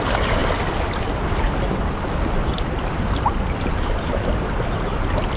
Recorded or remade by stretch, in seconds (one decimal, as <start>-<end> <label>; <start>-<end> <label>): 0.0-5.4 recorded